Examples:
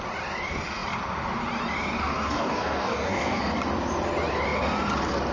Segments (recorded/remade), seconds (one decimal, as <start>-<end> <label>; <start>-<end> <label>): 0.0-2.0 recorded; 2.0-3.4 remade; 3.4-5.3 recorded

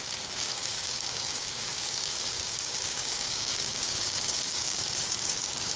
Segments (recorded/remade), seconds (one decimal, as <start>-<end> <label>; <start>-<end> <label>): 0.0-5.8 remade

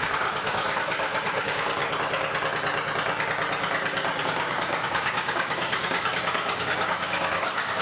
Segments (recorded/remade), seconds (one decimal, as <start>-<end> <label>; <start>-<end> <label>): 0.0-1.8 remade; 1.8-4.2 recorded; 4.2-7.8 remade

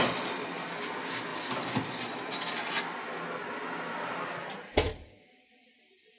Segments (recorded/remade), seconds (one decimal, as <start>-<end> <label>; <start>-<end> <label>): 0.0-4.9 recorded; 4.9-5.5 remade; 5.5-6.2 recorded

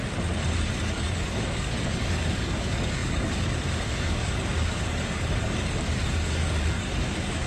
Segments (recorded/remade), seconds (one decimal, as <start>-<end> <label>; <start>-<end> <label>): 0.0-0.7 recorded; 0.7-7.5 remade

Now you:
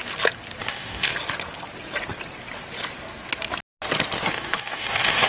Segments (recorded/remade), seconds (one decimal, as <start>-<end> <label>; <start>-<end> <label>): 0.0-0.6 recorded; 0.6-1.1 remade; 1.1-4.3 recorded; 4.3-5.3 remade

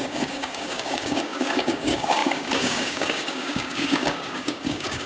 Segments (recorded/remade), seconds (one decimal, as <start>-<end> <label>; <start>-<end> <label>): 0.0-5.1 remade

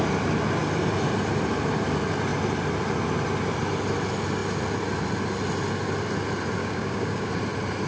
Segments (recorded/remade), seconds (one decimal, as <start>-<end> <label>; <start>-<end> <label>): 0.0-6.6 recorded; 6.6-7.3 remade; 7.3-7.9 recorded